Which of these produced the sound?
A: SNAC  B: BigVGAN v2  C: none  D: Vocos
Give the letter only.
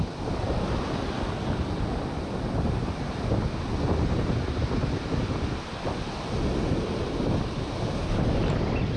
C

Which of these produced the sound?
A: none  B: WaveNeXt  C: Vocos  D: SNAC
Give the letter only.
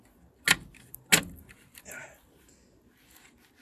A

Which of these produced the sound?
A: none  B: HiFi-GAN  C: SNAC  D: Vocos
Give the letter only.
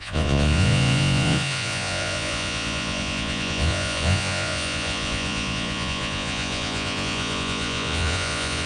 D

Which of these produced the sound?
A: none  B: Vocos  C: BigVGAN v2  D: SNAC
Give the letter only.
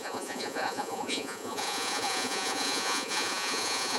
B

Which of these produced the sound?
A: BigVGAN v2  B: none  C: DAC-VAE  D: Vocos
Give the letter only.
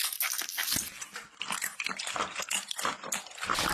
B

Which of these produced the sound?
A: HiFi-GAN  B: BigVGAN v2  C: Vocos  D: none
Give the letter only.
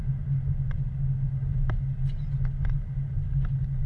D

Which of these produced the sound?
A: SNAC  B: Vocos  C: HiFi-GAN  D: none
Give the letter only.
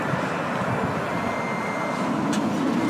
D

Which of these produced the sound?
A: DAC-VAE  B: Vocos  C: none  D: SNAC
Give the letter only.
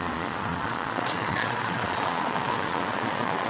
B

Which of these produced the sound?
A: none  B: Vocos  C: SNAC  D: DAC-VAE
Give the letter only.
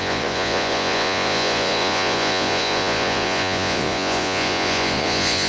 B